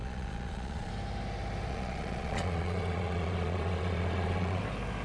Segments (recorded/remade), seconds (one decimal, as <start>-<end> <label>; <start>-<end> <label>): 0.0-0.9 remade; 0.9-1.7 recorded; 1.7-4.6 remade; 4.6-5.0 recorded